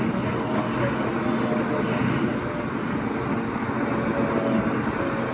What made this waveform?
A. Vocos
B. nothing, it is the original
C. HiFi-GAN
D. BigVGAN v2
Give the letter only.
B